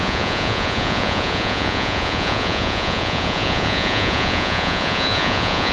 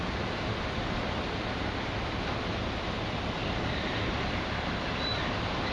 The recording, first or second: second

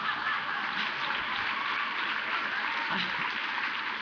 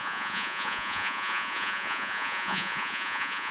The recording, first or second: first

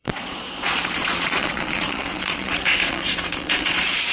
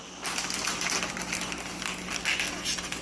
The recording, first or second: second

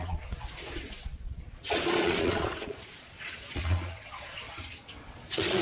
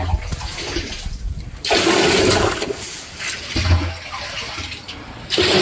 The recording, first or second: second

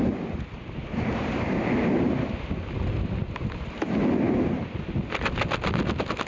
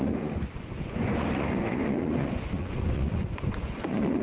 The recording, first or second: first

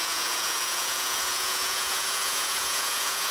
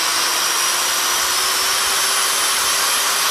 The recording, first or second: second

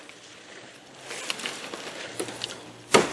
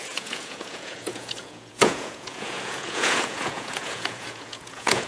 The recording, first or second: first